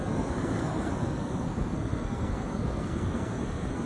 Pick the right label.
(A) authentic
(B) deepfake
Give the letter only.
B